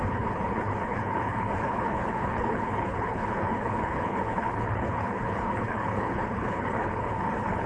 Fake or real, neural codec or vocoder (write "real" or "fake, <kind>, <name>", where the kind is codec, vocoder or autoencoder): fake, codec, HILCodec